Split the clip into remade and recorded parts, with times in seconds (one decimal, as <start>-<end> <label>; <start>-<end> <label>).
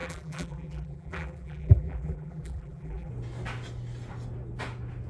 0.0-3.1 remade; 3.1-5.1 recorded